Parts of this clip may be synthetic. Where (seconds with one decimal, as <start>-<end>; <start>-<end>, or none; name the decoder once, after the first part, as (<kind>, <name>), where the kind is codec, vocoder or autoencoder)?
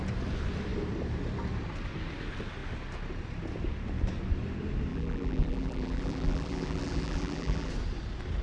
4.9-7.7 (vocoder, BigVGAN v2)